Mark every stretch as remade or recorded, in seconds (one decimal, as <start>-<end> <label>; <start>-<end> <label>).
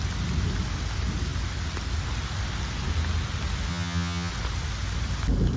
0.0-3.7 recorded; 3.7-4.3 remade; 4.3-5.6 recorded